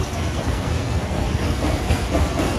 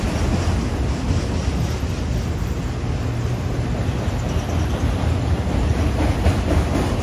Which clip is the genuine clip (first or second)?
second